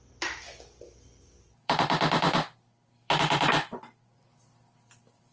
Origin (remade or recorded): remade